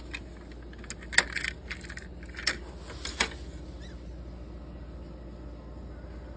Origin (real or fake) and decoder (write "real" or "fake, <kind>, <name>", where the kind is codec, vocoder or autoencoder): real